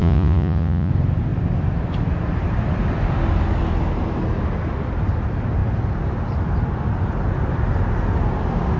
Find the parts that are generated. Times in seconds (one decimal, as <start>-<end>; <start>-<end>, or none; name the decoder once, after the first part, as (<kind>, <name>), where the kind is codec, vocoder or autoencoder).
0.0-0.9 (vocoder, Vocos)